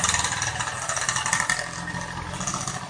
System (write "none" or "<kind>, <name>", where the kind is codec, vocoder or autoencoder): none